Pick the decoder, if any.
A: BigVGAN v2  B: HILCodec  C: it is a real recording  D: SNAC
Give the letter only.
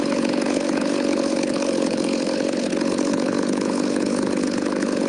B